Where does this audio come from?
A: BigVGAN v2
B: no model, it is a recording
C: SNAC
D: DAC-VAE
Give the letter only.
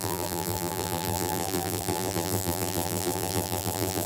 A